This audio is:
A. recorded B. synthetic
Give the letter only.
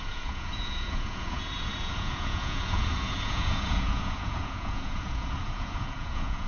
B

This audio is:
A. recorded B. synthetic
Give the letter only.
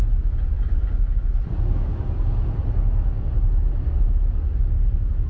A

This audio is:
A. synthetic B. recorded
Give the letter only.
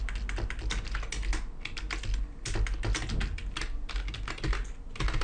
B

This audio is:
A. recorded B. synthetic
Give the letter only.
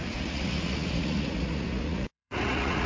B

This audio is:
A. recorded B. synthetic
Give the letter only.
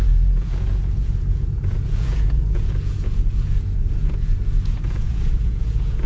B